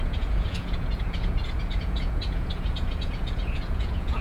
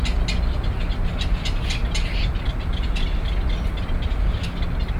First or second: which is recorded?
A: second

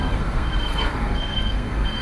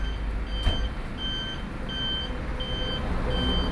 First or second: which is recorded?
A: second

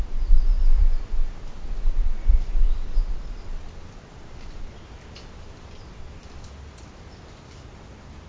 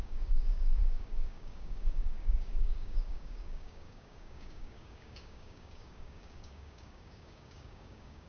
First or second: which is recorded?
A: first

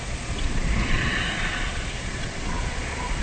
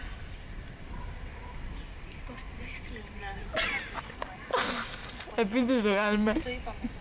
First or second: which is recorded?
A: second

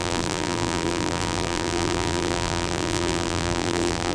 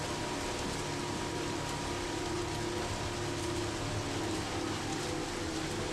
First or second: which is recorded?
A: second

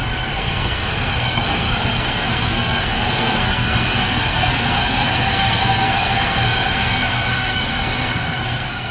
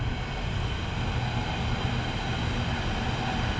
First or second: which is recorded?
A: second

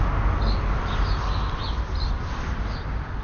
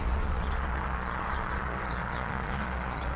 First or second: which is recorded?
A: first